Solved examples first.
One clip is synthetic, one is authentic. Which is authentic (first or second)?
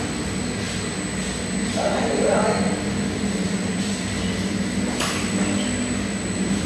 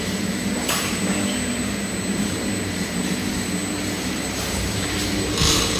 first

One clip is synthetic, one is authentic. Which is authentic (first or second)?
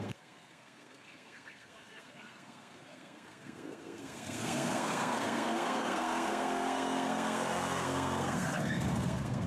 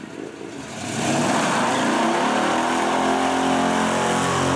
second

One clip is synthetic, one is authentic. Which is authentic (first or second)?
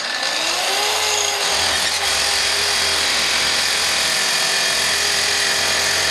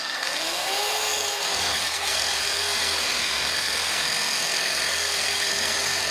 first